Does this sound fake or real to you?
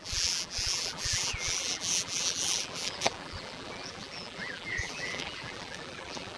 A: fake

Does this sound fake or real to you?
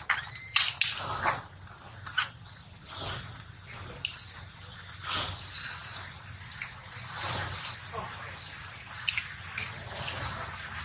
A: real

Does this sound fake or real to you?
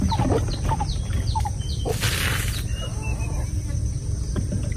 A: real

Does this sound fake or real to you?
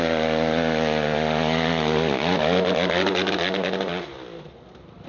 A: real